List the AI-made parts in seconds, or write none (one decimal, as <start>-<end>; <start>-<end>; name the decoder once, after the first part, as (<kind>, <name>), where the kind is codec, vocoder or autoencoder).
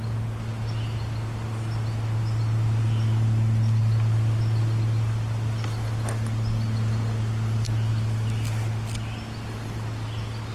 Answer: none